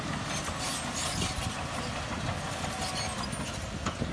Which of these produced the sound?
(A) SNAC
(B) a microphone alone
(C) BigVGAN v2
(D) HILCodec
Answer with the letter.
B